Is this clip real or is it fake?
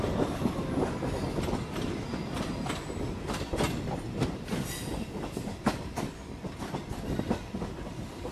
real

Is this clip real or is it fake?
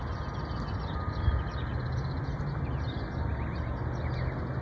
real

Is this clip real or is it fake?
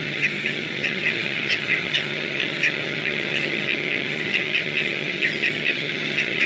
fake